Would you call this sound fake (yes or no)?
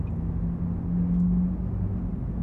no